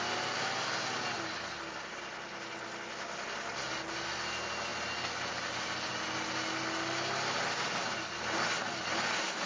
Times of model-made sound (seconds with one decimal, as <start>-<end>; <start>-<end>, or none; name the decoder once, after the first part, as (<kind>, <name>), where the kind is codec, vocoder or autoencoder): none